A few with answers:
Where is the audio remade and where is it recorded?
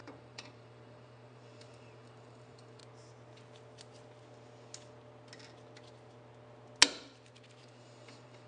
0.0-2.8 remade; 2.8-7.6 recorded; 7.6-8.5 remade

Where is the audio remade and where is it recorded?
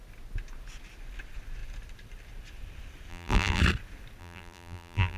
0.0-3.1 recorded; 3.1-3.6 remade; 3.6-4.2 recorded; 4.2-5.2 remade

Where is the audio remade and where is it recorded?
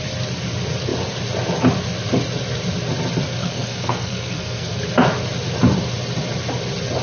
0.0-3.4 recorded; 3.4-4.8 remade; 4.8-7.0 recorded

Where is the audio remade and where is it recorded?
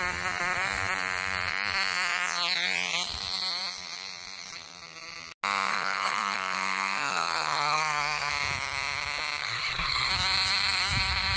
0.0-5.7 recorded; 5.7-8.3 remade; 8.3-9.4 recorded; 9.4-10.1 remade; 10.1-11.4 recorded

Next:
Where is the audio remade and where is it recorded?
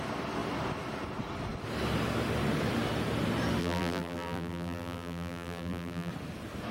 0.0-3.6 recorded; 3.6-6.1 remade; 6.1-6.7 recorded